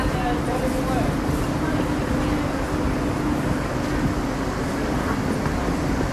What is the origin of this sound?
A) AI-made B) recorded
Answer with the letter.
B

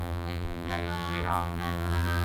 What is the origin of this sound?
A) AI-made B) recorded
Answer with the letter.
A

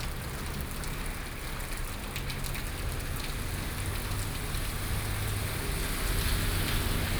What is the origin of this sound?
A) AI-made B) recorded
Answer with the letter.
B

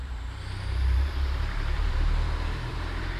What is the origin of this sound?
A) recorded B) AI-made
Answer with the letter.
B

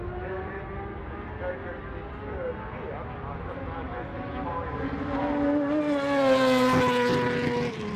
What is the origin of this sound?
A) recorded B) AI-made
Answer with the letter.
A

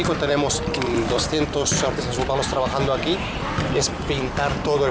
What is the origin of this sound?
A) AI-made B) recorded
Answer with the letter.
A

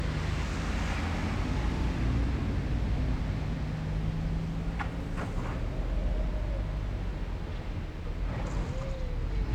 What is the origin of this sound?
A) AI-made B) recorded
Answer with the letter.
B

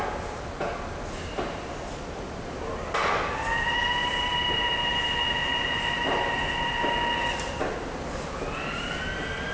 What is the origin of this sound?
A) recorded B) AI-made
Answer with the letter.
A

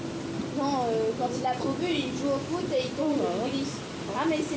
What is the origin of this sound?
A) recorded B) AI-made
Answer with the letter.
A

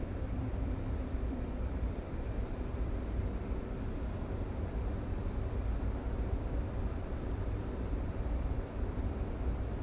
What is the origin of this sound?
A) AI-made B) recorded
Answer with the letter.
A